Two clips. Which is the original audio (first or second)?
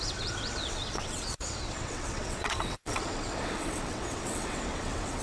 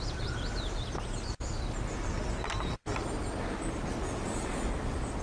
second